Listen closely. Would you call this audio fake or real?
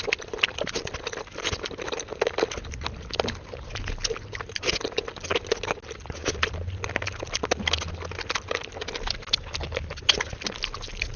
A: real